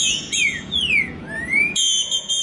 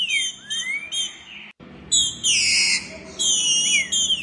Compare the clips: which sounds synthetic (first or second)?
first